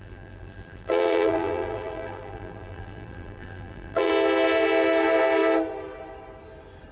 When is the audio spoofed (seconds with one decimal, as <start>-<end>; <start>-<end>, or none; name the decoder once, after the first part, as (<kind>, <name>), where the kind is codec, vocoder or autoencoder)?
0.0-4.1 (vocoder, BigVGAN v2)